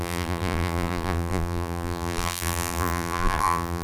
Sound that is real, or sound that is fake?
fake